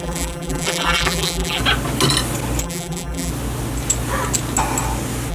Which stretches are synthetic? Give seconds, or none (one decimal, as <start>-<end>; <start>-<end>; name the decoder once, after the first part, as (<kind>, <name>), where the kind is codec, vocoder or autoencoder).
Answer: 0.0-1.6 (vocoder, BigVGAN v2); 2.6-3.3